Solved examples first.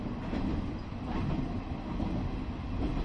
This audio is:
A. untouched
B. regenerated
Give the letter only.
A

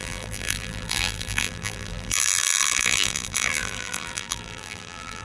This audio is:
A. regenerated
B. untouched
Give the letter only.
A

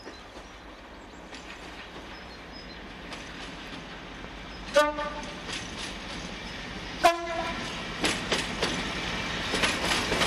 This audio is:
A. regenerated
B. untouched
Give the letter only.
B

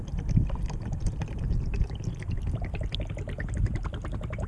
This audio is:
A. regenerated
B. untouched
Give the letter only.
B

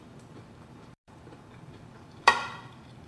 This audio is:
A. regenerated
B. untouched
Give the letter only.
A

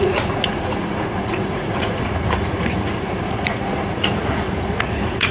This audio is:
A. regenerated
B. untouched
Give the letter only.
A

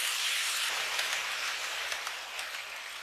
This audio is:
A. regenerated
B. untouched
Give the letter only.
B